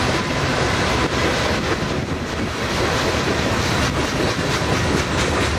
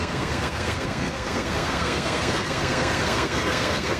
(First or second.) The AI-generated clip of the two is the second